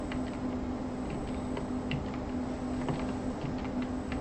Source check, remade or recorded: recorded